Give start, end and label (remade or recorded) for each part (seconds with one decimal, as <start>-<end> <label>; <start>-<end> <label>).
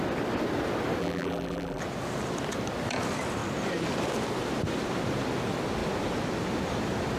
0.0-1.0 recorded; 1.0-1.8 remade; 1.8-7.2 recorded